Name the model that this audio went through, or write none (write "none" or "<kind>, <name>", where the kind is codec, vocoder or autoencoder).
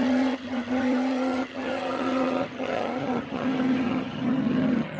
vocoder, HiFi-GAN